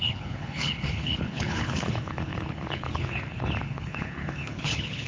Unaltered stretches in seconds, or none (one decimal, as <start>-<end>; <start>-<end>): none